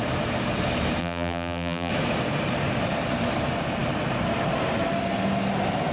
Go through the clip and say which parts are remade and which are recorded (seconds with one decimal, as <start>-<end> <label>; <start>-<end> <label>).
0.0-1.0 recorded; 1.0-1.9 remade; 1.9-5.9 recorded